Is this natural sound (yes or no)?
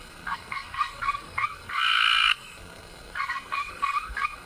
no